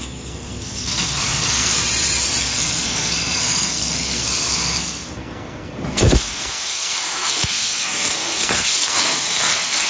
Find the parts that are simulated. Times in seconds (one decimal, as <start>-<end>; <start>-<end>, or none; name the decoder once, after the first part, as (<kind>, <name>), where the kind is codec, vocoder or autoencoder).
0.0-1.8 (codec, SNAC); 2.4-9.9